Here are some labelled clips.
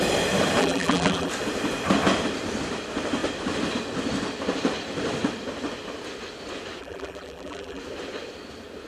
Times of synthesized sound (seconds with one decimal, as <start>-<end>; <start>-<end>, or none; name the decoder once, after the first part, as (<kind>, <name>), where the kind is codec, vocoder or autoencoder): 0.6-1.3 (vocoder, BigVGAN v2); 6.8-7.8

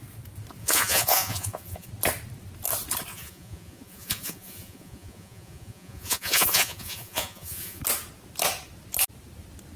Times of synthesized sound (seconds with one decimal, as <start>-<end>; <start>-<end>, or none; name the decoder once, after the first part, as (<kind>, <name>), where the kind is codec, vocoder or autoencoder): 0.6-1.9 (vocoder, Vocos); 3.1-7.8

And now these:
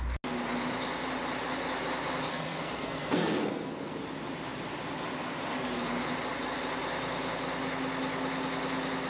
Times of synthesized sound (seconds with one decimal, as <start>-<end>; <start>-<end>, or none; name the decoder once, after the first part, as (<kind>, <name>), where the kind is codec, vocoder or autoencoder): 2.3-3.9 (codec, SNAC)